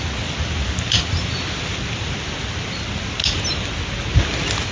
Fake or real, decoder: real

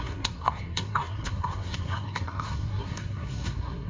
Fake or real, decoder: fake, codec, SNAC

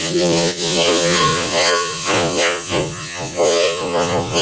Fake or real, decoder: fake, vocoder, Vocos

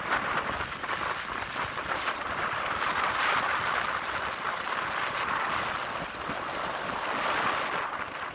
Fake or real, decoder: real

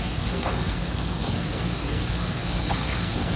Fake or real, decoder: fake, codec, SNAC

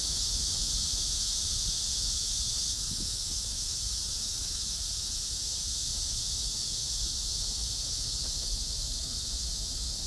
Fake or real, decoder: fake, autoencoder, DAC-VAE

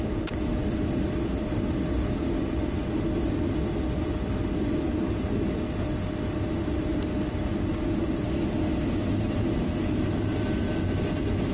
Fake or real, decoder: real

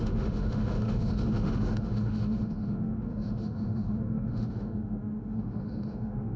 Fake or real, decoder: fake, autoencoder, DAC-VAE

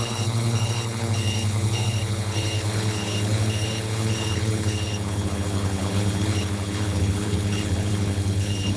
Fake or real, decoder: fake, codec, HILCodec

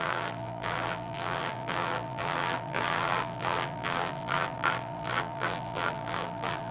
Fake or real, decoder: fake, vocoder, BigVGAN v2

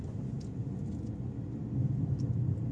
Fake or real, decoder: real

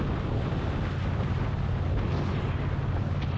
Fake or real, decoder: real